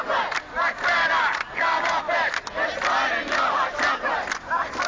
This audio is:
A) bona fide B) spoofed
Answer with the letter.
A